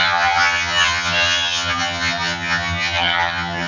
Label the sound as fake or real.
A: fake